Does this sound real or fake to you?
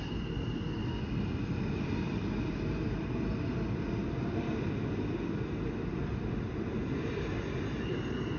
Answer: real